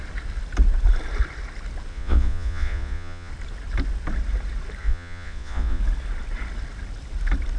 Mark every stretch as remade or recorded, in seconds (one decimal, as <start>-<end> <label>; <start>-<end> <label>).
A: 0.0-1.9 recorded; 1.9-3.3 remade; 3.3-4.8 recorded; 4.8-5.8 remade; 5.8-7.6 recorded